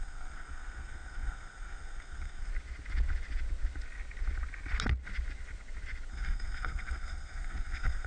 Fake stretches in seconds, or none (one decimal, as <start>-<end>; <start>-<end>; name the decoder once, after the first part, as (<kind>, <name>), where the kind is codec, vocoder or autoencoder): 0.0-2.5 (codec, SNAC); 6.1-8.1